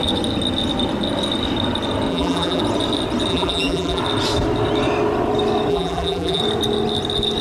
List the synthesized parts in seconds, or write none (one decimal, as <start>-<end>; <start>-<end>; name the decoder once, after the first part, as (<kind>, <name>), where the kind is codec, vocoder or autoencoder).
2.1-2.6 (vocoder, BigVGAN v2); 3.3-4.0; 5.7-6.4